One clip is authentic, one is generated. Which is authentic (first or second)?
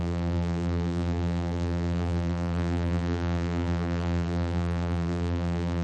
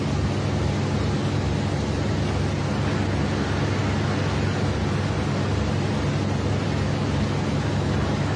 second